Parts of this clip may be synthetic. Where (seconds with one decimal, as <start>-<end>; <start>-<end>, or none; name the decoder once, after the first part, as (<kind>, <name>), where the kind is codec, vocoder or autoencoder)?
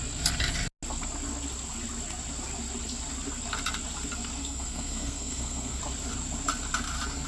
4.4-5.8 (codec, SNAC)